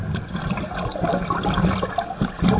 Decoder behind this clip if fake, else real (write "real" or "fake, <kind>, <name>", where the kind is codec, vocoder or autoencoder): real